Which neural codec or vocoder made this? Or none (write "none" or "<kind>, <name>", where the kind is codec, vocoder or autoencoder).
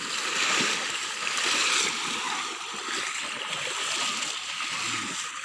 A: none